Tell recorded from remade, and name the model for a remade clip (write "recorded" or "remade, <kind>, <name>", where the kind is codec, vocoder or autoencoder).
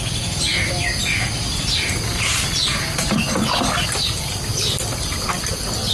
recorded